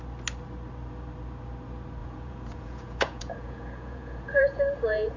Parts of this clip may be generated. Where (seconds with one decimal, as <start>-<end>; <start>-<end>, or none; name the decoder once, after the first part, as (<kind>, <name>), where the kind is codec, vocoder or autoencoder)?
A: 2.0-5.2 (vocoder, Vocos)

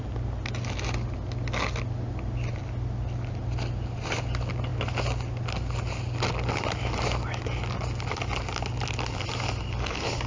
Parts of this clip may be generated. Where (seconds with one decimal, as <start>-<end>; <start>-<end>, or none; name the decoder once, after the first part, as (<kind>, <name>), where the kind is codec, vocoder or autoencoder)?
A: none